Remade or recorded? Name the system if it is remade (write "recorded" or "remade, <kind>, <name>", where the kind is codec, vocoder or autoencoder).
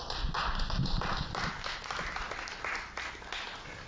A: recorded